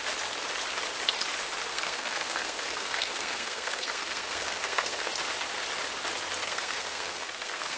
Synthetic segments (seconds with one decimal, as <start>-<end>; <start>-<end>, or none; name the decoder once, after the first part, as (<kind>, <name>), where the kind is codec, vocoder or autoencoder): 1.7-5.1 (codec, SNAC); 6.4-7.8